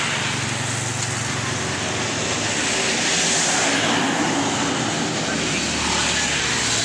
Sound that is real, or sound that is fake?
real